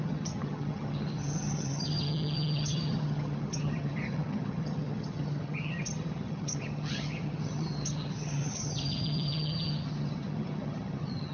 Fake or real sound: fake